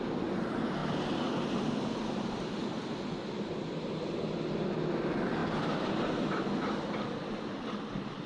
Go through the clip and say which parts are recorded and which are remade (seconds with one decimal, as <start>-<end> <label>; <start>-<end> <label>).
0.0-5.4 recorded; 5.4-6.1 remade; 6.1-8.3 recorded